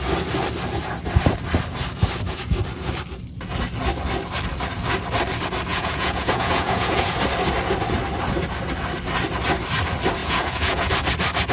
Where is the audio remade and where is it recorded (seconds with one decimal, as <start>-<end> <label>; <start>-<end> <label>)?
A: 0.0-5.7 recorded; 5.7-7.2 remade; 7.2-10.2 recorded; 10.2-10.9 remade; 10.9-11.5 recorded